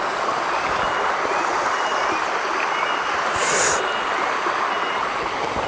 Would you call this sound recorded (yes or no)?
yes